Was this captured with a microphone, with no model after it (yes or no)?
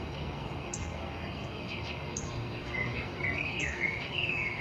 no